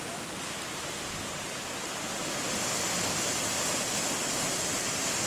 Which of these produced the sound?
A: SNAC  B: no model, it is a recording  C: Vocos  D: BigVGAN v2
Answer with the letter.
B